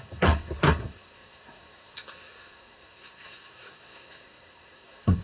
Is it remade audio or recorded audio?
remade